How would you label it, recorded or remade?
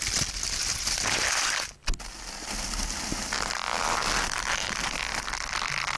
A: recorded